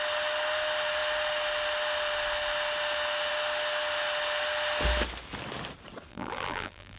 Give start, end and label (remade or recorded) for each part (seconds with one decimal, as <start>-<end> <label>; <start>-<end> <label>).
0.0-6.1 recorded; 6.1-7.0 remade